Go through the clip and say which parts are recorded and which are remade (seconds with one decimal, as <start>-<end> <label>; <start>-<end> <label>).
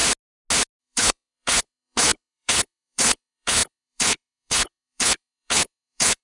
0.0-0.8 recorded; 0.8-6.2 remade